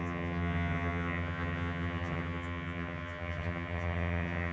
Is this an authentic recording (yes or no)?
no